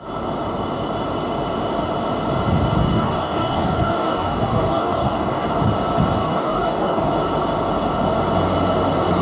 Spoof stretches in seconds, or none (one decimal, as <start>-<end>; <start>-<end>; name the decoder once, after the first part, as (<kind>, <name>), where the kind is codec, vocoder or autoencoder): 2.8-5.5 (codec, DAC); 6.2-7.1